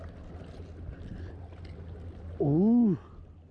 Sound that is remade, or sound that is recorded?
recorded